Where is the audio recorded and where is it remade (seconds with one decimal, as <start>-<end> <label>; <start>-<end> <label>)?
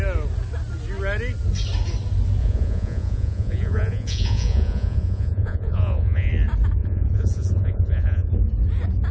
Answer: 0.0-2.4 recorded; 2.4-6.3 remade; 6.3-6.8 recorded; 6.8-8.3 remade; 8.3-9.1 recorded